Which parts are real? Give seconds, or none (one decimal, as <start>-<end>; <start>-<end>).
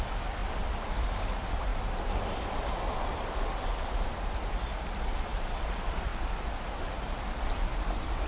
6.1-7.4